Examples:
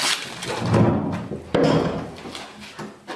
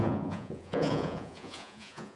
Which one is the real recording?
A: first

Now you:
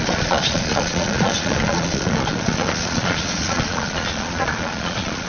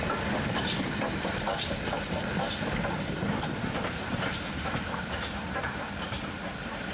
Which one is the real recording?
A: second